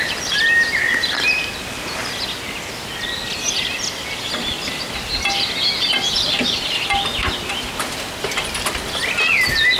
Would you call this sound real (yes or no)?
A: yes